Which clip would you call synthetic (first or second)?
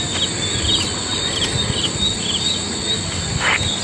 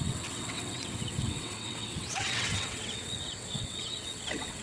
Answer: second